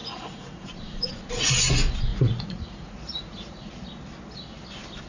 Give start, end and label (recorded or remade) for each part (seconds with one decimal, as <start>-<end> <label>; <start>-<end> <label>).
0.0-1.1 remade; 1.1-2.1 recorded; 2.1-3.7 remade; 3.7-5.1 recorded